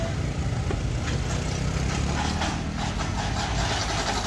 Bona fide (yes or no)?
yes